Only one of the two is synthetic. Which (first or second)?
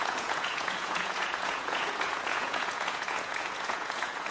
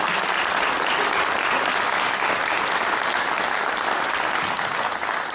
first